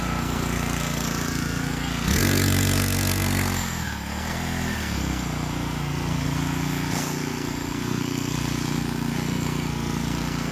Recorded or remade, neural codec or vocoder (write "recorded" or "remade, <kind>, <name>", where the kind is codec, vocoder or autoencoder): remade, codec, SNAC